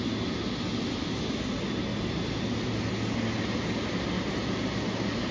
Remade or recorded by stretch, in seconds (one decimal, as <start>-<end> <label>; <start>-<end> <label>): 0.0-5.3 recorded